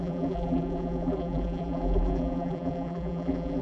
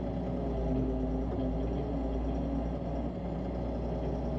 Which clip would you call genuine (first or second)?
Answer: second